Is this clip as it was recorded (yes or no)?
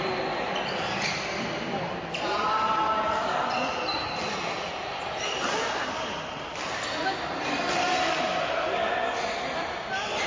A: yes